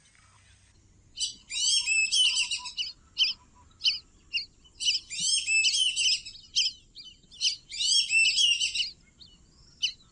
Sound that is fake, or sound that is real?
real